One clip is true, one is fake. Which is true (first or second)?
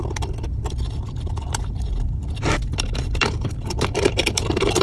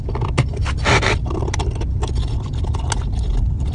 second